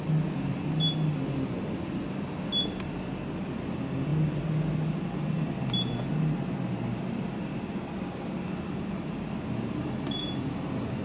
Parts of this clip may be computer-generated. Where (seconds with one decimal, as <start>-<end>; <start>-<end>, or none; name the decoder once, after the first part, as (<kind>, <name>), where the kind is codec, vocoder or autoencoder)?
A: none